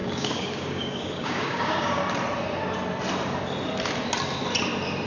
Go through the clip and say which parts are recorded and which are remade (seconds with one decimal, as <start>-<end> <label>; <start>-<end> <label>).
0.0-2.0 remade; 2.0-5.1 recorded